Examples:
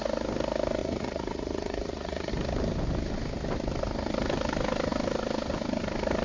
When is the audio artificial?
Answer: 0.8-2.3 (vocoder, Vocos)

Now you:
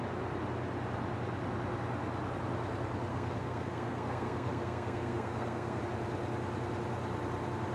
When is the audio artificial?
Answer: 3.1-5.8 (codec, SNAC)

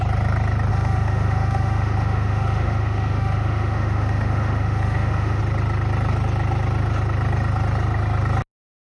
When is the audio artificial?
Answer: 0.7-5.4 (autoencoder, DAC-VAE)

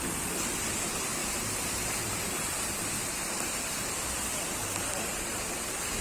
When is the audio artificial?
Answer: 0.0-6.0 (vocoder, BigVGAN v2)

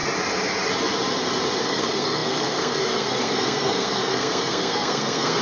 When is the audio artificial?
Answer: 1.6-5.4 (codec, SNAC)

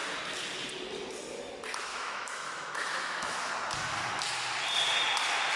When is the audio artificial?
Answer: 1.9-3.5 (autoencoder, DAC-VAE)